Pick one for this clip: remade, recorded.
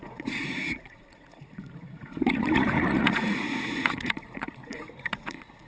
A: remade